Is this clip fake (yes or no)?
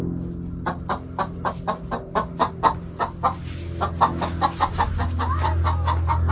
no